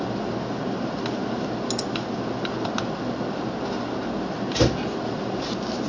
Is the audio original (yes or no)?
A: yes